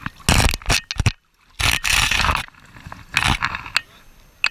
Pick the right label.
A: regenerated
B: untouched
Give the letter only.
B